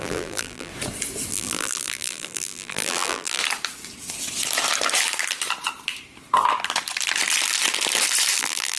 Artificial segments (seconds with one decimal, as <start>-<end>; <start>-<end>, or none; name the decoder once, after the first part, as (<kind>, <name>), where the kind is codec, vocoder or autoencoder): 0.0-0.7 (vocoder, BigVGAN v2); 1.3-3.4; 8.4-8.8